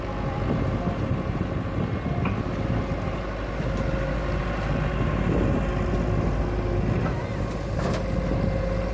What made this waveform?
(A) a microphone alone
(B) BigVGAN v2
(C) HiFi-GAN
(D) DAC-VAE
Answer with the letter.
A